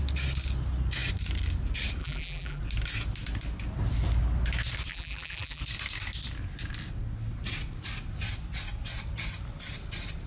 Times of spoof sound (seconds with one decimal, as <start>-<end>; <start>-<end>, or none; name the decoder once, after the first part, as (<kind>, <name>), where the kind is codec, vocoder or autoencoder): 2.0-2.6 (vocoder, BigVGAN v2); 4.9-5.6